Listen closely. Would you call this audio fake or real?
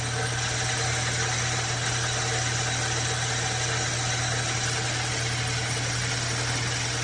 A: real